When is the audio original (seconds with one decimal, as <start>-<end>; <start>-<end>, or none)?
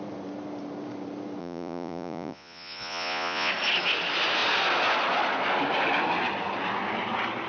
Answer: 0.0-1.4; 3.5-7.5